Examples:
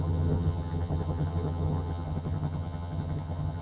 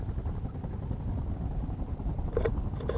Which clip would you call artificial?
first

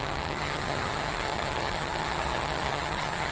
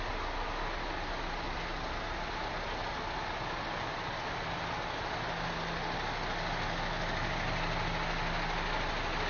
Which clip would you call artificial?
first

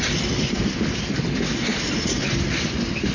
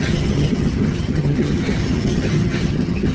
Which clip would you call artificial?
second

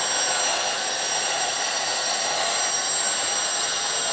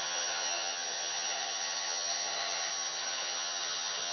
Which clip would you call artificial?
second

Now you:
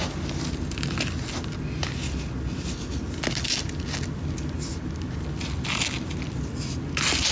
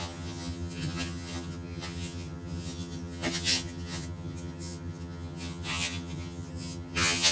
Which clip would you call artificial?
second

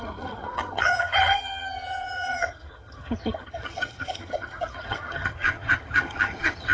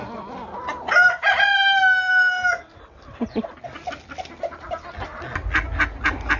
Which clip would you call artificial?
first